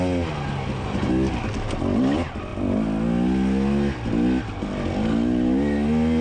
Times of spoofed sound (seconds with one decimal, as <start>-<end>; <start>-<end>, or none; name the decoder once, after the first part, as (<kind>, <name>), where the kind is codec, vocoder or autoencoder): none